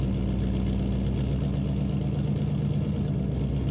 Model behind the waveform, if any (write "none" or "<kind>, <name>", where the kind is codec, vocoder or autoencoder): none